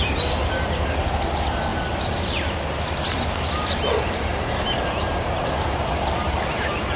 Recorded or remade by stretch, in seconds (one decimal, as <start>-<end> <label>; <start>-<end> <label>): 0.0-7.0 recorded